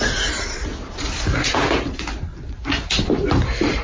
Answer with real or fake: real